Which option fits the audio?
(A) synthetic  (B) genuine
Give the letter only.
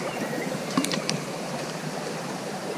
A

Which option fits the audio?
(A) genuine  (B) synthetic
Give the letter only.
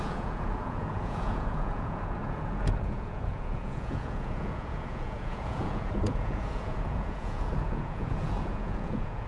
B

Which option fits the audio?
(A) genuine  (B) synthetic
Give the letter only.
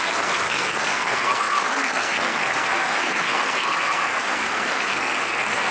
B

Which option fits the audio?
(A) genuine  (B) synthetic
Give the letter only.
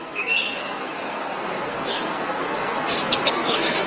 B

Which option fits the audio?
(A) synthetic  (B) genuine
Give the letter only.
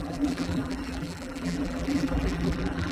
A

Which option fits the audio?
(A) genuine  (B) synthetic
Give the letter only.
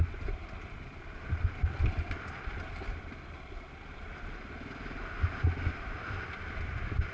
A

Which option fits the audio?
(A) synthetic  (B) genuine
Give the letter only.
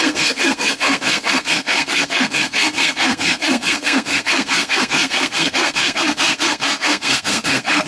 A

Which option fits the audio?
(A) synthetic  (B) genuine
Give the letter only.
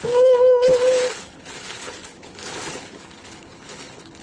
A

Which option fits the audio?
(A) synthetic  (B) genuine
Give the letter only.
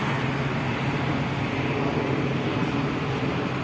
B